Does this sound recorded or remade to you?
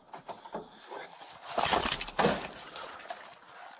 recorded